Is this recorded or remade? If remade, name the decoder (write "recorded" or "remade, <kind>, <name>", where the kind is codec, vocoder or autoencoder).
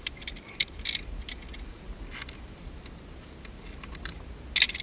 recorded